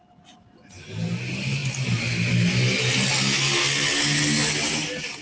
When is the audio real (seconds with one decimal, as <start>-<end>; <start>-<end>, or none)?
0.0-5.2